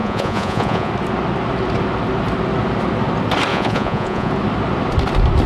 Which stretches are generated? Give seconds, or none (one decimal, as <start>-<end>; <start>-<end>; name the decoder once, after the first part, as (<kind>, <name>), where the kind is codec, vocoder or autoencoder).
0.0-0.9 (vocoder, Vocos); 3.5-4.3